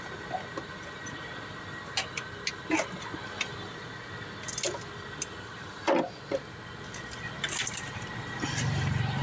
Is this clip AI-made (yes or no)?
no